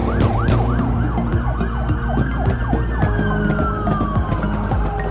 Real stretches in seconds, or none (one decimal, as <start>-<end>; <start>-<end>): 0.0-5.1